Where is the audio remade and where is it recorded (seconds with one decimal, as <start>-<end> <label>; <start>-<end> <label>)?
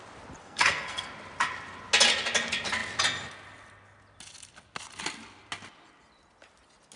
0.0-0.4 recorded; 0.4-1.1 remade; 1.1-7.0 recorded